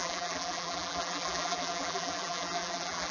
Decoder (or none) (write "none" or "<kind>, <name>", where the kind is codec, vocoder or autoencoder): vocoder, BigVGAN v2